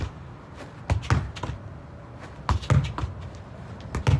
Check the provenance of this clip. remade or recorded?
recorded